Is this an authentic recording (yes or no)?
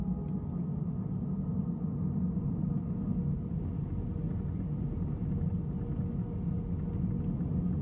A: yes